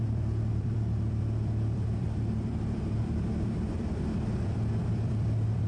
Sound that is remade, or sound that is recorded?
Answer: remade